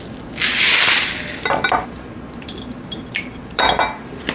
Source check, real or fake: fake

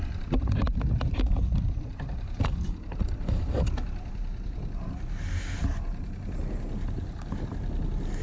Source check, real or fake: real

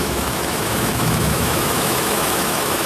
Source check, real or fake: fake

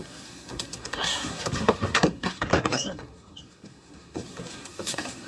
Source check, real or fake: fake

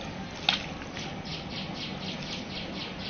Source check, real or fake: real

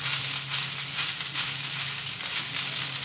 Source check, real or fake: real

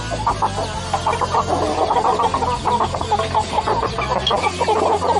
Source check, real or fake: real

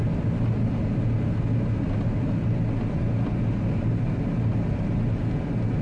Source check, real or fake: real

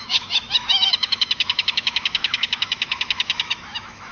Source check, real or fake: fake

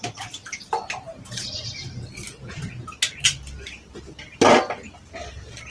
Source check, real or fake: real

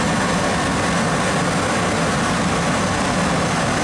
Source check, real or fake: real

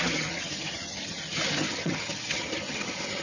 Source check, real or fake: fake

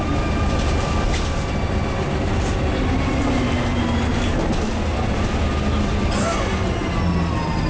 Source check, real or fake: real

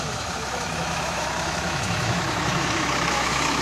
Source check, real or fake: fake